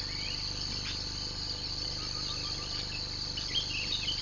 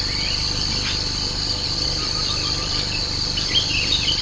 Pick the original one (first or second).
first